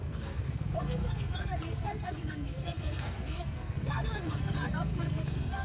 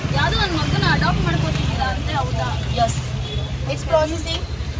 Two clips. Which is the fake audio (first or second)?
first